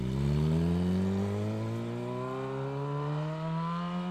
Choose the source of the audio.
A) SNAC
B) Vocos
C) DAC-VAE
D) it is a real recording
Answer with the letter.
D